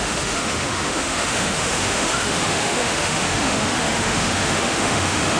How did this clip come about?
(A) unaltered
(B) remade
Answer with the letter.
B